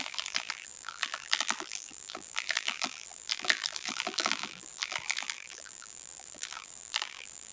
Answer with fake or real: fake